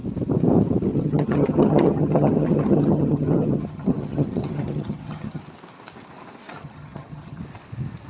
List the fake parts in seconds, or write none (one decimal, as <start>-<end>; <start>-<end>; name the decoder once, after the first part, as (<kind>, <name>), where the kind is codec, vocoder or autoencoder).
0.9-5.4 (vocoder, HiFi-GAN); 6.6-7.4